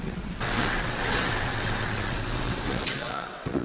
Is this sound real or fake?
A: fake